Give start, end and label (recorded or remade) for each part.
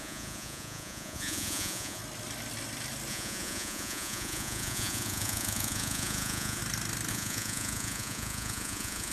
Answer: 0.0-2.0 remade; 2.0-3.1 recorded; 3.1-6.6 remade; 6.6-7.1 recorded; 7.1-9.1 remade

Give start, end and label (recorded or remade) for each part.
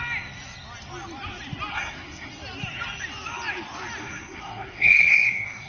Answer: 0.0-1.7 recorded; 1.7-2.3 remade; 2.3-4.0 recorded; 4.0-5.7 remade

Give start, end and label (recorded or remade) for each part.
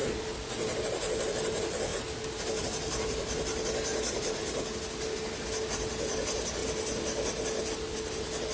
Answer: 0.0-8.5 recorded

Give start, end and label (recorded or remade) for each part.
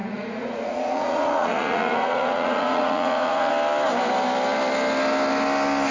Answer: 0.0-3.5 remade; 3.5-5.9 recorded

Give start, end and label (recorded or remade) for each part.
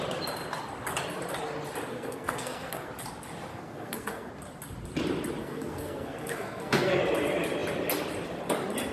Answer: 0.0-1.9 recorded; 1.9-2.9 remade; 2.9-3.5 recorded; 3.5-4.3 remade; 4.3-5.4 recorded; 5.4-7.0 remade; 7.0-8.9 recorded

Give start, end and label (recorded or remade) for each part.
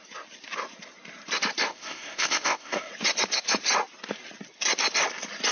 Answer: 0.0-1.7 recorded; 1.7-2.9 remade; 2.9-5.5 recorded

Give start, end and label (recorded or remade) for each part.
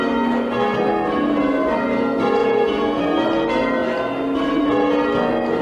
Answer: 0.0-2.4 recorded; 2.4-3.0 remade; 3.0-5.6 recorded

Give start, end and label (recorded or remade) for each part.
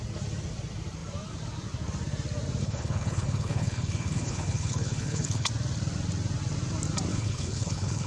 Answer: 0.0-2.6 recorded; 2.6-5.5 remade; 5.5-7.1 recorded; 7.1-8.1 remade